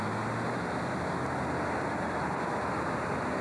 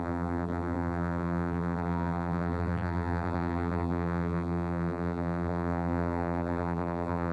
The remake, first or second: second